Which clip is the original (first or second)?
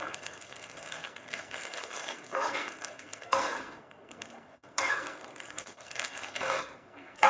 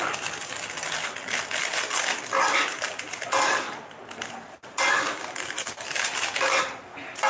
second